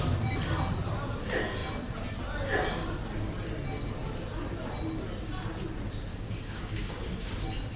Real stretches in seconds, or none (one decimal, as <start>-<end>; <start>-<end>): 0.0-6.1; 7.3-7.8

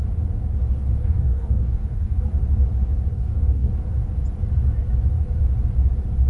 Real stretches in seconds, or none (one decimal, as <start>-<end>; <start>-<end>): 0.0-1.0; 2.2-3.1; 3.7-6.3

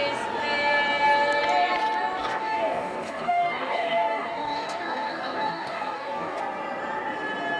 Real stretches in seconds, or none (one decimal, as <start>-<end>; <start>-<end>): 0.0-2.2; 6.4-7.6

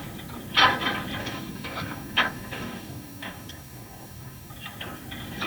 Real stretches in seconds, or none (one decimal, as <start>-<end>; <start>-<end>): 0.0-1.2; 4.5-5.5